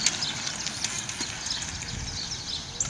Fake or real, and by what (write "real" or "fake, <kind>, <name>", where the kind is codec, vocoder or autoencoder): real